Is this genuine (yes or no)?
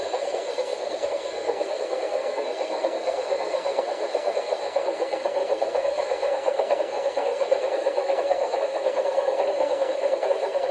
no